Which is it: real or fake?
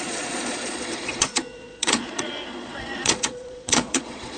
fake